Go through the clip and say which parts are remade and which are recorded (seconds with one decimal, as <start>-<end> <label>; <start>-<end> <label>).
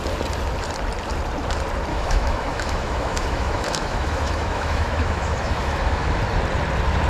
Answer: 0.0-1.9 recorded; 1.9-6.2 remade; 6.2-7.1 recorded